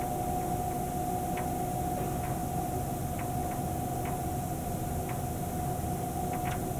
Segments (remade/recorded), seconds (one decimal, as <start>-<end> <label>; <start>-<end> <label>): 0.0-6.8 recorded